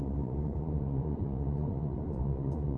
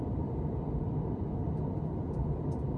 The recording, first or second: second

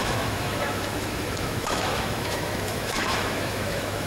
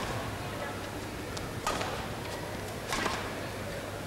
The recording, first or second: second